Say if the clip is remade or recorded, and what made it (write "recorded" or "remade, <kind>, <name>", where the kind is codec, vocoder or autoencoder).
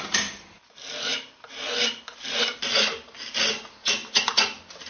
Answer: recorded